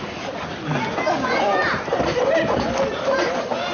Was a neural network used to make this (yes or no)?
no